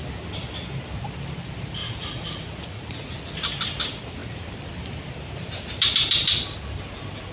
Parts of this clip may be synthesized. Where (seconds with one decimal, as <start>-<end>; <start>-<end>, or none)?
1.8-3.2